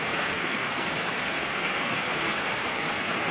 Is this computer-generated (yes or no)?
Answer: yes